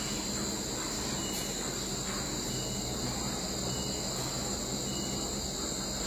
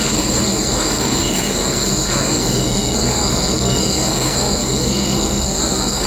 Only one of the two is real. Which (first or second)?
first